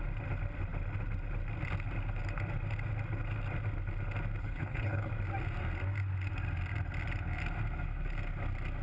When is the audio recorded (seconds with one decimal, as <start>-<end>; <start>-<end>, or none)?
0.0-4.4; 5.1-8.8